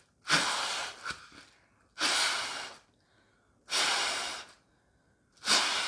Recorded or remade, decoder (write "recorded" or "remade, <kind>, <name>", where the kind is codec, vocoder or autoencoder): recorded